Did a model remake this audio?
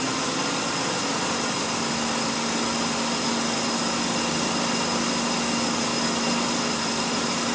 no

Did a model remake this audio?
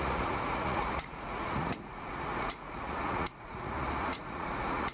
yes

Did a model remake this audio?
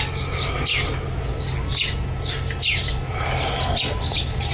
no